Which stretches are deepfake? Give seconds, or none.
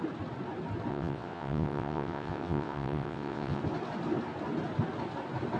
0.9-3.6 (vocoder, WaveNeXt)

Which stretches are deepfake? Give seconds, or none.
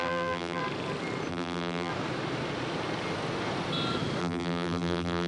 0.0-0.6 (vocoder, BigVGAN v2); 1.3-1.9; 4.2-5.3